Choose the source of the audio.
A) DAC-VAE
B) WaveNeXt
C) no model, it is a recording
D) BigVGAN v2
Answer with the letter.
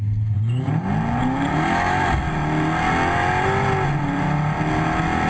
C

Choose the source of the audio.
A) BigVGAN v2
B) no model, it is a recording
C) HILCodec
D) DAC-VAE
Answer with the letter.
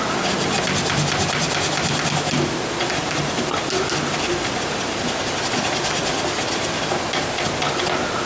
B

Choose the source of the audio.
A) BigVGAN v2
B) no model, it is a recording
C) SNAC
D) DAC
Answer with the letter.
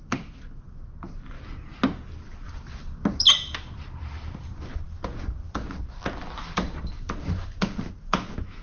B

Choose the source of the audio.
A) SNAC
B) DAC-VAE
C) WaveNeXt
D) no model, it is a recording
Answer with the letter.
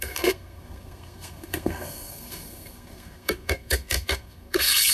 A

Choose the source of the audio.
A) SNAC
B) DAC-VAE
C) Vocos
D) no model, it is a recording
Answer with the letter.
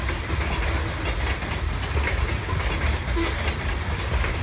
D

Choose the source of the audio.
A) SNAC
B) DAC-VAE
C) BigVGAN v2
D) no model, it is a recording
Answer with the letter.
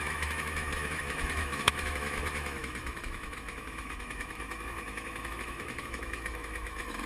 B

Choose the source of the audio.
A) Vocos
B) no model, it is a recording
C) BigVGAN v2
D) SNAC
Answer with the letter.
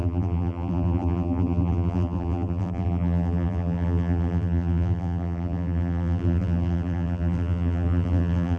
C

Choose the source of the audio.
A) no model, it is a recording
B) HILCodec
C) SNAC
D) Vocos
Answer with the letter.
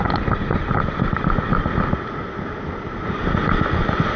A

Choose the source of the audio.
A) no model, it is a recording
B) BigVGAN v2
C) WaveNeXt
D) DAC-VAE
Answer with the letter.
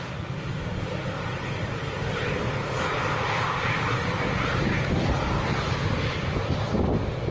A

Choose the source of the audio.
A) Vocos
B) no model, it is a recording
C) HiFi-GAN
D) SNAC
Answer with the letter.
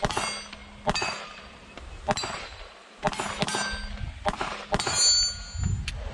B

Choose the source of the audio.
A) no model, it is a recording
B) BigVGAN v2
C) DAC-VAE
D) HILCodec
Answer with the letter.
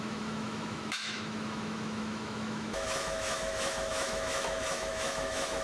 C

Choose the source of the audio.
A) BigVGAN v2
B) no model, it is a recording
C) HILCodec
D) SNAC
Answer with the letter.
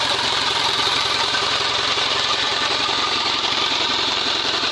A